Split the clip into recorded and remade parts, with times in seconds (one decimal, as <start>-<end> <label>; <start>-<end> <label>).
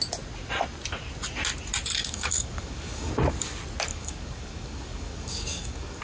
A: 0.0-2.0 recorded; 2.0-3.1 remade; 3.1-3.9 recorded; 3.9-6.0 remade